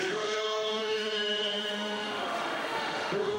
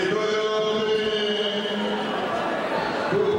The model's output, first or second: first